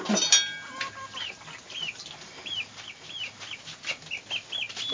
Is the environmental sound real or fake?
real